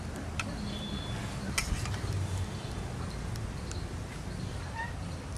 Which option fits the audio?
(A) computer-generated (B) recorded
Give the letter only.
B